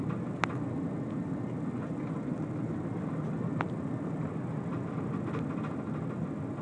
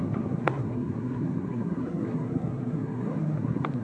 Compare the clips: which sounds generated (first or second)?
second